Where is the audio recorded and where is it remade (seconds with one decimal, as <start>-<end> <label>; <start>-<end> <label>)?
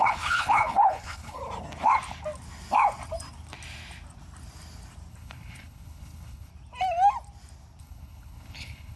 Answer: 0.0-1.4 remade; 1.4-5.1 recorded; 5.1-6.5 remade; 6.5-7.8 recorded; 7.8-9.0 remade